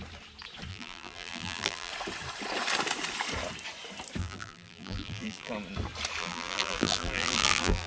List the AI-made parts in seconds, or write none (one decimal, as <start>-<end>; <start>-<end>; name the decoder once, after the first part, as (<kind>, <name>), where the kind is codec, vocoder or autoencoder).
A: 0.7-1.9 (vocoder, BigVGAN v2); 4.2-5.5; 6.2-7.9